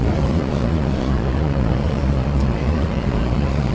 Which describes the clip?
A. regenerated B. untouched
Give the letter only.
A